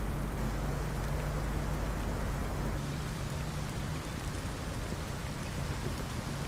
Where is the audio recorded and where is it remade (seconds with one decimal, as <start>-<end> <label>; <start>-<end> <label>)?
0.0-2.4 recorded; 2.4-4.3 remade; 4.3-6.5 recorded